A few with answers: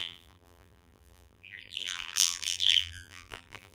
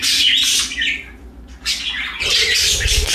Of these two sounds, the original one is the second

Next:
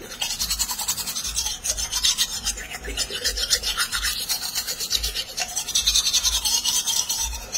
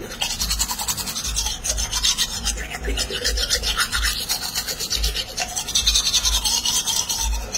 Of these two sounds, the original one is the second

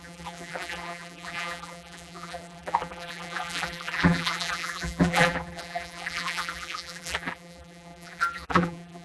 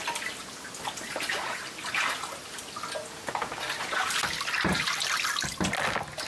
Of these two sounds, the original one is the second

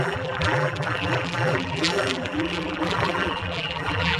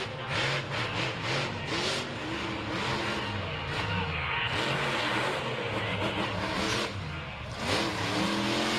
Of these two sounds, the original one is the second